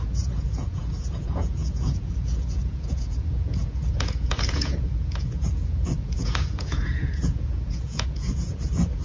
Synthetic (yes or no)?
yes